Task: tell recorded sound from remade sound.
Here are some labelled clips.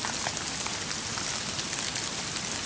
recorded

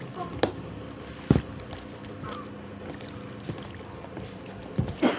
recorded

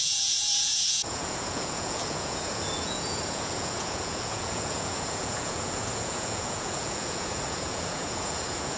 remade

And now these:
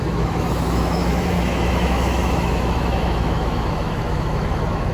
remade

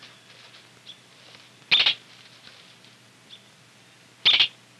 recorded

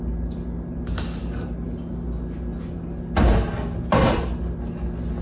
recorded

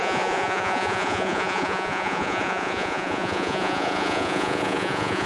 remade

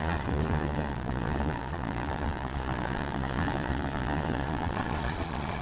remade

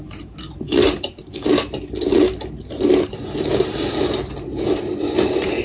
remade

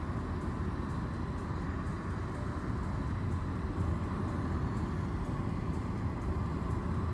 recorded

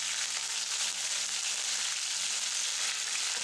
recorded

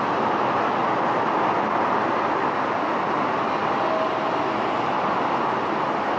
recorded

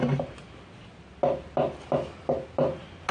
recorded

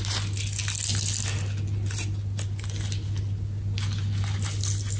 recorded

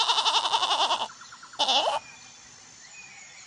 recorded